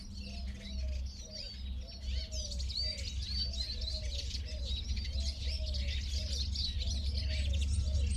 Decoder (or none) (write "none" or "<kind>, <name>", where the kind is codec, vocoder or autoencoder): none